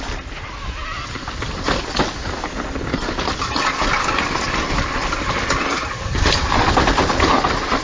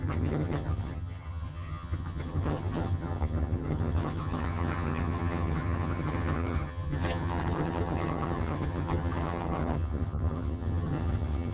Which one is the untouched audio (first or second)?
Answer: first